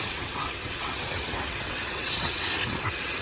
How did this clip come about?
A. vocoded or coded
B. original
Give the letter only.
A